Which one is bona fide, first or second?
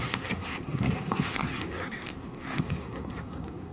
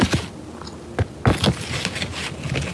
second